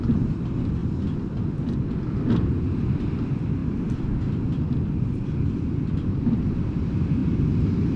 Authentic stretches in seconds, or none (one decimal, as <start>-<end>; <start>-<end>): 0.0-8.0